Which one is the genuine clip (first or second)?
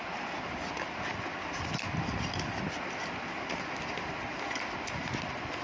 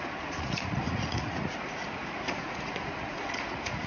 first